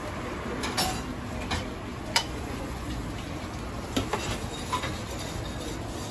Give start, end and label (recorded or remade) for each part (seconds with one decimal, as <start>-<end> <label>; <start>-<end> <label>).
0.0-1.9 recorded; 1.9-3.0 remade; 3.0-6.1 recorded